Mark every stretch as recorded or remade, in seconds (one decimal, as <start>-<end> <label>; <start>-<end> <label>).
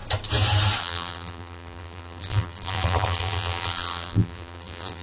0.0-0.8 recorded; 0.8-5.0 remade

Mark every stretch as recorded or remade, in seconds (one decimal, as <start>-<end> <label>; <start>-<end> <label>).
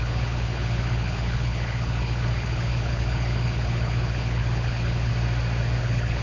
0.0-5.1 remade; 5.1-5.8 recorded; 5.8-6.2 remade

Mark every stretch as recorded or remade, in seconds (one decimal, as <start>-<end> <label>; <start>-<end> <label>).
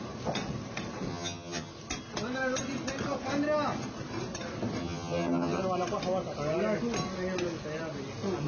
0.0-1.1 recorded; 1.1-1.7 remade; 1.7-4.8 recorded; 4.8-5.6 remade; 5.6-8.5 recorded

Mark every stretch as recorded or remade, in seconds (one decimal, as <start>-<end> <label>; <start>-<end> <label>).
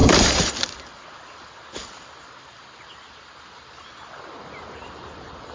0.0-0.5 remade; 0.5-5.5 recorded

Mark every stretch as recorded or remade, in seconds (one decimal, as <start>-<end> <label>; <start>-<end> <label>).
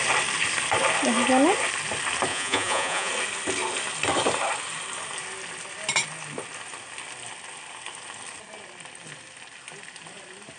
0.0-2.3 recorded; 2.3-3.1 remade; 3.1-10.6 recorded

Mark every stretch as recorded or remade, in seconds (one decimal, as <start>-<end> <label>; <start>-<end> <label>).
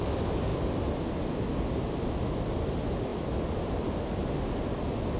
0.0-3.1 recorded; 3.1-3.7 remade; 3.7-5.2 recorded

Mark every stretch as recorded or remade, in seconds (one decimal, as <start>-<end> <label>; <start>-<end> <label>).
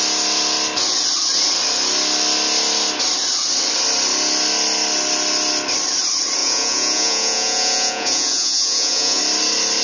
0.0-6.4 recorded; 6.4-9.2 remade; 9.2-9.8 recorded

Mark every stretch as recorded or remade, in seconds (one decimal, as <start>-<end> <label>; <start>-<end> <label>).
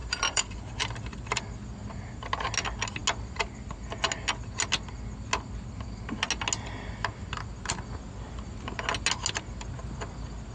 0.0-1.4 remade; 1.4-10.5 recorded